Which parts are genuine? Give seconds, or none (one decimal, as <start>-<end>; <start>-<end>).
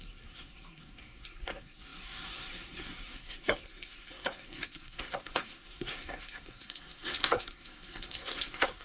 none